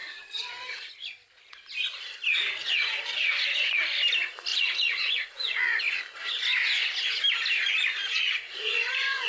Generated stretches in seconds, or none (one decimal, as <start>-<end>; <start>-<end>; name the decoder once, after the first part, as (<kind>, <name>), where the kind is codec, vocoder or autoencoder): 0.0-0.9 (vocoder, Vocos); 2.6-3.7; 4.5-5.8; 8.0-9.3